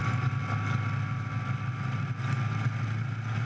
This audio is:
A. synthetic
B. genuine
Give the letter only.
B